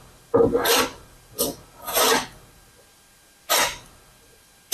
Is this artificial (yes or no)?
no